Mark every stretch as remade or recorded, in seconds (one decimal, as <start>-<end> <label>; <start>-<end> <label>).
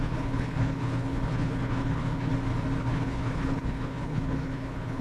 0.0-2.3 remade; 2.3-2.8 recorded; 2.8-5.0 remade